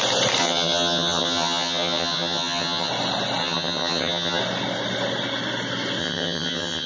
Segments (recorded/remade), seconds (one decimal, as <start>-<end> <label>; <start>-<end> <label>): 0.0-0.4 recorded; 0.4-2.9 remade; 2.9-3.4 recorded; 3.4-4.4 remade; 4.4-6.0 recorded; 6.0-6.9 remade